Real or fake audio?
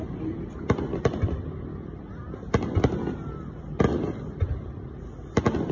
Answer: real